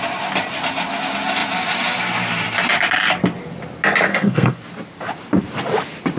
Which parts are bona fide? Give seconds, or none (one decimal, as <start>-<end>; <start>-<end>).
0.0-4.1; 4.6-6.2